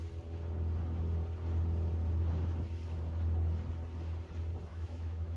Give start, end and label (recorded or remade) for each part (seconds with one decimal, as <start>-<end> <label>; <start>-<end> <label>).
0.0-4.7 recorded; 4.7-5.4 remade